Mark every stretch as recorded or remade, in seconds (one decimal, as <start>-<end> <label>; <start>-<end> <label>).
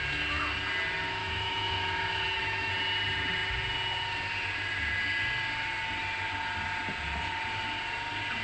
0.0-1.2 recorded; 1.2-2.7 remade; 2.7-8.4 recorded